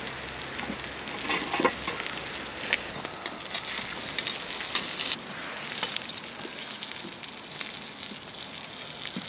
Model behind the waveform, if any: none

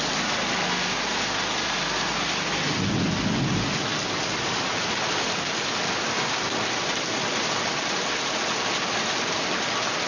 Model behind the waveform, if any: none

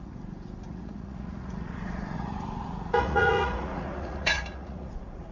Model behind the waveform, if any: vocoder, Vocos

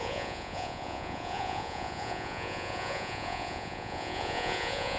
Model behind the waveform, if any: vocoder, Vocos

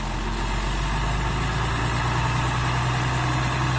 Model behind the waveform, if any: none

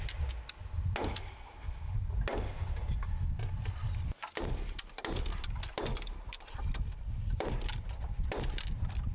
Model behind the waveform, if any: none